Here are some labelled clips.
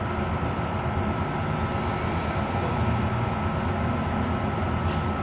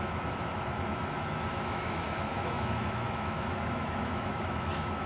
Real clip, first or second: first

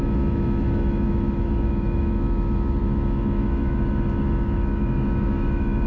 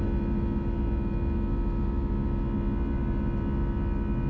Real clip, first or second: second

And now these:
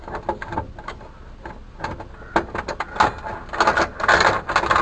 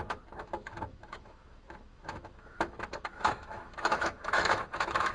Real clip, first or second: first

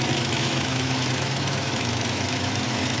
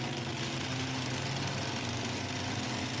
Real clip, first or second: second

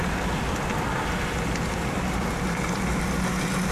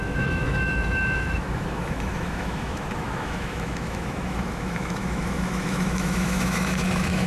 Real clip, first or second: first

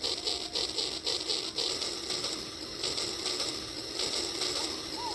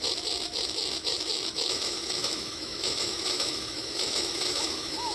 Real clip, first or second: first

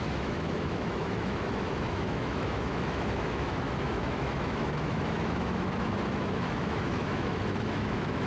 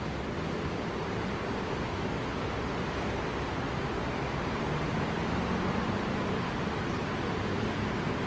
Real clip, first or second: second